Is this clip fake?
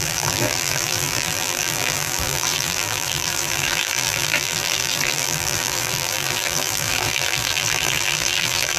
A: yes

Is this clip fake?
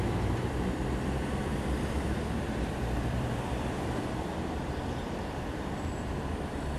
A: yes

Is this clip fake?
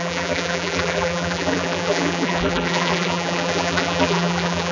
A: yes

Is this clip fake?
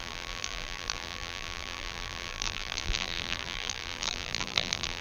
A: yes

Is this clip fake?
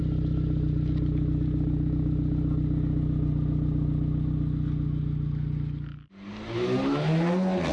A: no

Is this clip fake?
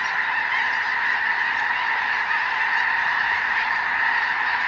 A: yes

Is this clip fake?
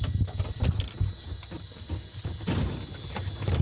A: no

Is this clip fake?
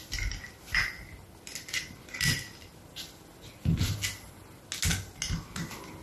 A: no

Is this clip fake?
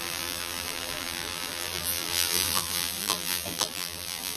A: yes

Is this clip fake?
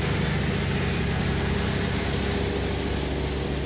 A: no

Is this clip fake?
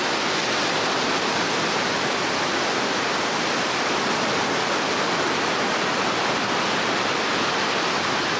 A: no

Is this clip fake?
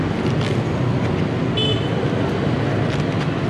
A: no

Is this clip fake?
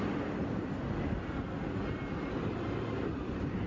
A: no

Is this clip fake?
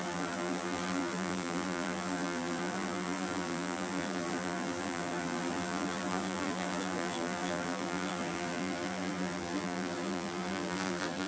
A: yes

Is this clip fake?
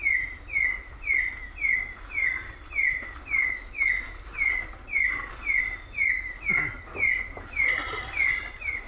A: no